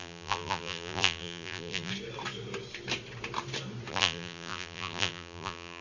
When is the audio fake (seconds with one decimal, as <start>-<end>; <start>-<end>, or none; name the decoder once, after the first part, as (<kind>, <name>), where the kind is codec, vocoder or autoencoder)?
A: 0.0-1.9 (vocoder, BigVGAN v2); 3.9-5.8